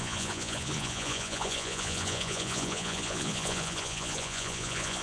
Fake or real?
fake